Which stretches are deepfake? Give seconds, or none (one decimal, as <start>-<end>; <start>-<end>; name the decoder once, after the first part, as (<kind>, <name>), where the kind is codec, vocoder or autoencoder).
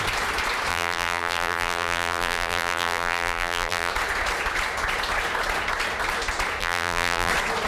0.7-3.9 (vocoder, BigVGAN v2); 6.6-7.3